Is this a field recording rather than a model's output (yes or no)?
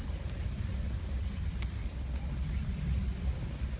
yes